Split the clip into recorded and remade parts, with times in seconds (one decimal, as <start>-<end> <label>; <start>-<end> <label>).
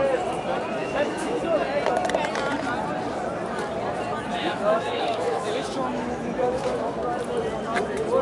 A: 0.0-0.8 recorded; 0.8-1.4 remade; 1.4-4.3 recorded; 4.3-6.9 remade; 6.9-8.2 recorded